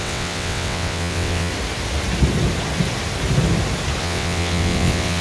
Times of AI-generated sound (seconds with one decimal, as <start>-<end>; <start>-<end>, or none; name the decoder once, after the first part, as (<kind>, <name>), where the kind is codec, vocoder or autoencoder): 0.0-1.5 (vocoder, WaveNeXt); 4.0-5.2